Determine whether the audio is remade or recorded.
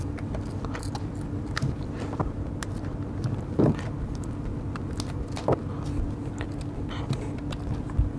recorded